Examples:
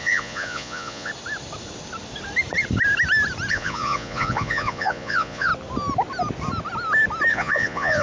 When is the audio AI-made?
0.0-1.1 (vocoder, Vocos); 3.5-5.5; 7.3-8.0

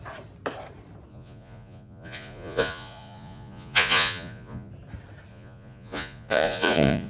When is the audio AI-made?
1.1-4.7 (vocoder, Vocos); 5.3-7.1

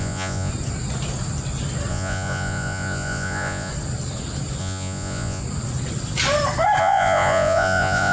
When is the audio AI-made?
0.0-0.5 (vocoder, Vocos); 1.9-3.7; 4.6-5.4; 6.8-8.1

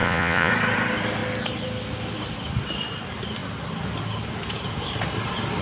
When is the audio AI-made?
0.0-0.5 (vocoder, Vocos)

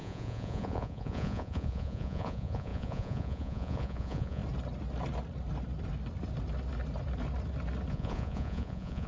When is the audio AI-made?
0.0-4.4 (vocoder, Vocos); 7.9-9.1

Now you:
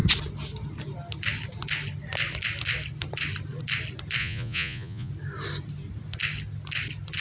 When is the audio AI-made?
4.2-5.1 (vocoder, Vocos)

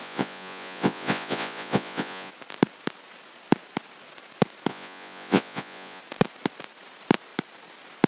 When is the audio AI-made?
0.0-2.3 (vocoder, Vocos); 4.7-6.0